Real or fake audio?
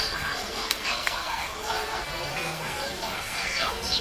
fake